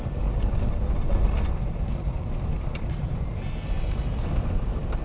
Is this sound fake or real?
real